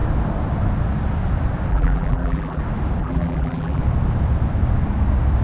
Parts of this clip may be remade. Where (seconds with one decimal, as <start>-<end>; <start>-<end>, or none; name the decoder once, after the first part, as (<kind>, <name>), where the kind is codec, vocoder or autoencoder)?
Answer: 1.7-2.6 (vocoder, BigVGAN v2); 3.0-3.8